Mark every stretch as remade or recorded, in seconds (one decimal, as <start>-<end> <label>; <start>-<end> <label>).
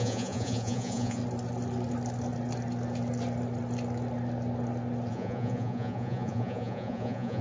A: 0.0-1.2 remade; 1.2-5.1 recorded; 5.1-7.4 remade